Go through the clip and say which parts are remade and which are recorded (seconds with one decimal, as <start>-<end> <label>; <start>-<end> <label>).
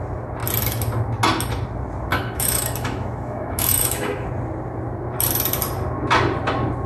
0.0-2.1 recorded; 2.1-4.3 remade; 4.3-6.9 recorded